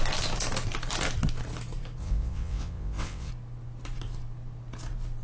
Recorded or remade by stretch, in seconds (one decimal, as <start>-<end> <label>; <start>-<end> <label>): 0.0-2.0 recorded; 2.0-3.3 remade; 3.3-5.2 recorded